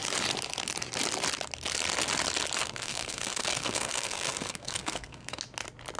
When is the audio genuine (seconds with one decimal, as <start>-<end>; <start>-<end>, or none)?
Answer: 0.0-2.6; 5.4-6.0